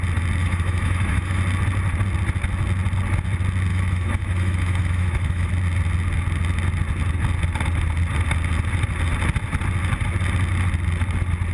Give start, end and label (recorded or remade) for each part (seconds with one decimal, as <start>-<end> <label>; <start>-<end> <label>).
0.0-0.4 recorded; 0.4-1.4 remade; 1.4-3.7 recorded; 3.7-5.5 remade; 5.5-11.5 recorded